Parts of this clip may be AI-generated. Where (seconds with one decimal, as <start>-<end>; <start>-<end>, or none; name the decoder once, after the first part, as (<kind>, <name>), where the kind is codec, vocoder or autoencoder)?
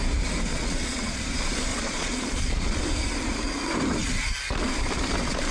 0.5-1.2 (vocoder, Vocos); 1.7-2.8